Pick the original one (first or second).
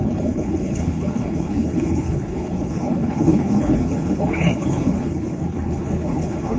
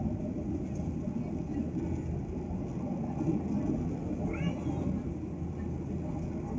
second